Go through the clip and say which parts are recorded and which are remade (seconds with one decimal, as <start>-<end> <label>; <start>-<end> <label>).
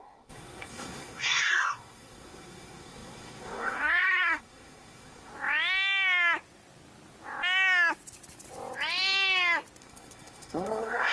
0.0-5.3 remade; 5.3-9.8 recorded; 9.8-11.1 remade